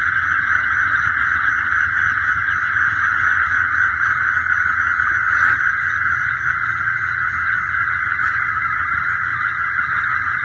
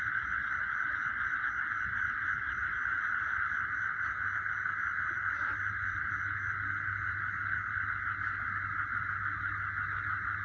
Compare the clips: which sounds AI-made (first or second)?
first